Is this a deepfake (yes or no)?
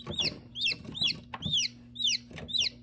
no